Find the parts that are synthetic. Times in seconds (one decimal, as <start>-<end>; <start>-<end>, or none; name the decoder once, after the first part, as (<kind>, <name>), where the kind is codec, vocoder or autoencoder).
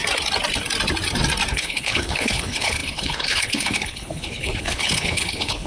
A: 1.5-5.7 (codec, HILCodec)